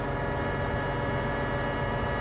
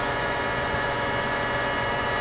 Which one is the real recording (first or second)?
first